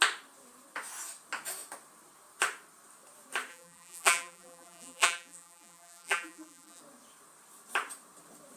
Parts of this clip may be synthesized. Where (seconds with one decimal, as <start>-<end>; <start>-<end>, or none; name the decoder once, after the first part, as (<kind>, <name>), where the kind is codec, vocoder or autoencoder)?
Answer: 3.5-6.8 (vocoder, BigVGAN v2)